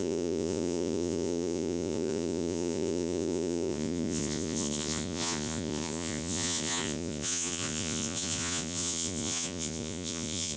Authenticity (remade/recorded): remade